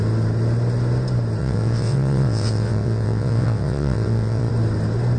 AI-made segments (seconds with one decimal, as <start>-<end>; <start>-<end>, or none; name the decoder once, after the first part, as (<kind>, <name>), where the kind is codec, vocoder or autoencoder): 1.4-4.5 (vocoder, WaveNeXt)